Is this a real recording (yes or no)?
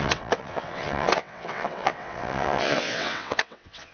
no